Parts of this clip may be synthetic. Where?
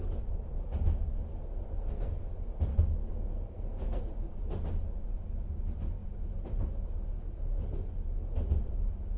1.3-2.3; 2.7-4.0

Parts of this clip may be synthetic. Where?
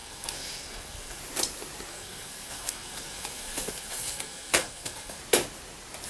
0.0-1.2; 1.9-5.2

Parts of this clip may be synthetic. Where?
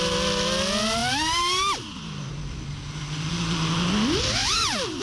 none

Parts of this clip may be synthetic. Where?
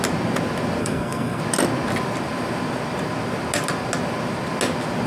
0.8-1.4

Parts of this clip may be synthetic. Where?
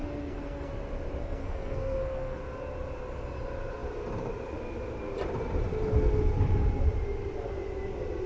0.0-0.7; 1.2-2.4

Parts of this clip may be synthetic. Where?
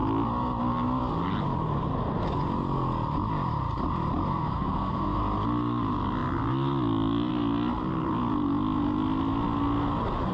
4.3-5.2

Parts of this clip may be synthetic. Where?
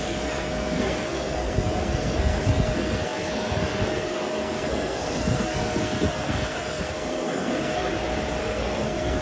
0.0-7.9; 8.4-9.2